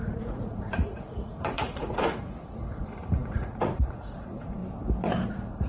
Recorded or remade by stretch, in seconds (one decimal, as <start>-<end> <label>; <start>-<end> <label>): 0.0-4.6 remade; 4.6-5.3 recorded; 5.3-5.7 remade